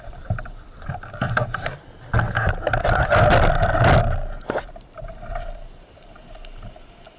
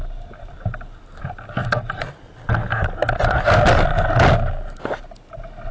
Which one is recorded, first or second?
second